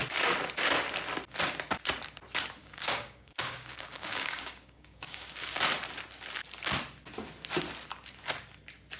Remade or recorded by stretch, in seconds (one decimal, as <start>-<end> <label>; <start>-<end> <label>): 0.0-2.6 recorded; 2.6-5.6 remade; 5.6-9.0 recorded